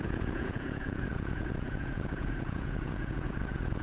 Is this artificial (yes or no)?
yes